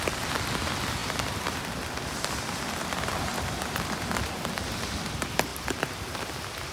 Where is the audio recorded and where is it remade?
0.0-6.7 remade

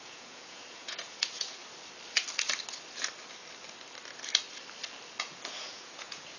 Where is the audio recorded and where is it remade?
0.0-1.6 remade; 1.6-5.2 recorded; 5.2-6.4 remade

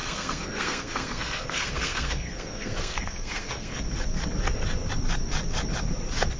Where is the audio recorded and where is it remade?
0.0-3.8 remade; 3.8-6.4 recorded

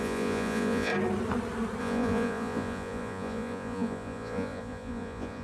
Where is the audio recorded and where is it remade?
0.0-0.9 remade; 0.9-1.8 recorded; 1.8-5.4 remade

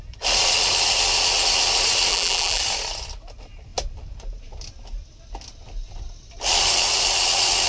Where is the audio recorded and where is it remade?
0.0-2.1 recorded; 2.1-2.6 remade; 2.6-7.7 recorded